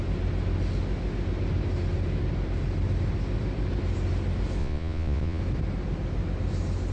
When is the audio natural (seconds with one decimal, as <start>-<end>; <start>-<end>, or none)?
0.0-4.6; 5.4-6.9